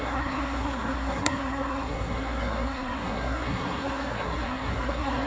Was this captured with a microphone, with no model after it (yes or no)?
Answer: no